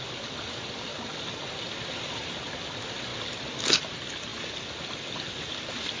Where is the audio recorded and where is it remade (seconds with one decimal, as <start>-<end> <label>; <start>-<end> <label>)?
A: 0.0-6.0 recorded